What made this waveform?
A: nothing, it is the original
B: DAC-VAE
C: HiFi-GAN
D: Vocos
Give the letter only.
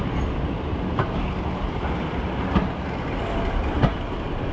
A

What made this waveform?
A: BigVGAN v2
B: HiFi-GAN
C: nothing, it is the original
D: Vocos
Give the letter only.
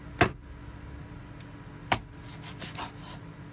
C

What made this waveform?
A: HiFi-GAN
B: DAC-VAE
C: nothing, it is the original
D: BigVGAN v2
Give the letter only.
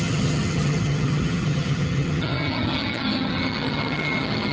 A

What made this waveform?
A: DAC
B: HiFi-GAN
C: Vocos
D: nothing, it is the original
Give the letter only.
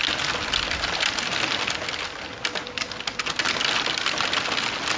D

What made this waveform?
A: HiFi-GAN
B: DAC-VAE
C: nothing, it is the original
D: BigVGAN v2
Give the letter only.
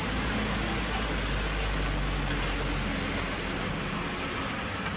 C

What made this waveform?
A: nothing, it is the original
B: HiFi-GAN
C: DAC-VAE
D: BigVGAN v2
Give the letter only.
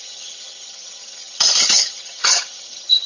B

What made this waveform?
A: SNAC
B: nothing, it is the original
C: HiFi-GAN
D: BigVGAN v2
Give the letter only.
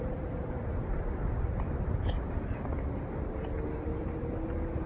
B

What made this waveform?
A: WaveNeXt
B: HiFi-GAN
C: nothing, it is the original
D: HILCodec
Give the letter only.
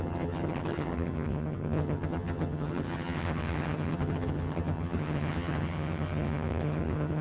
B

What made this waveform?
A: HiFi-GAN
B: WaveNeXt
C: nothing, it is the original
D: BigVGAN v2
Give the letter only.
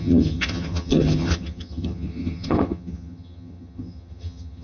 A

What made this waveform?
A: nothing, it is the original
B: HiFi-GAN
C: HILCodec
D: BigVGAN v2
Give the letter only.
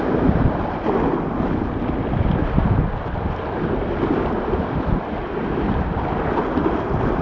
A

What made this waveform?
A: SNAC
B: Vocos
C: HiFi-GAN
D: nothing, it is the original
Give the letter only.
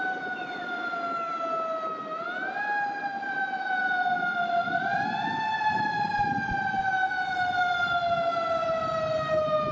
D